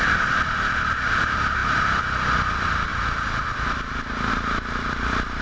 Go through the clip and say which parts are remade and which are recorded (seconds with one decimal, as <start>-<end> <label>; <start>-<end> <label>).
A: 0.0-5.4 recorded